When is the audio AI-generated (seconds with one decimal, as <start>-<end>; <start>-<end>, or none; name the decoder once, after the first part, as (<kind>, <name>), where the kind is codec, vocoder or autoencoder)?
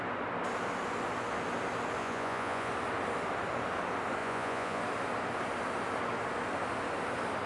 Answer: 2.0-2.7 (vocoder, Vocos); 4.2-4.8